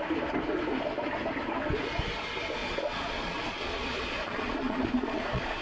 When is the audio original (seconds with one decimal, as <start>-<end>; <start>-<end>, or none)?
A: 0.0-2.6